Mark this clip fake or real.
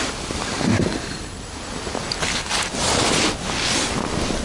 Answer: real